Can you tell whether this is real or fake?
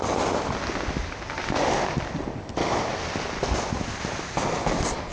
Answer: real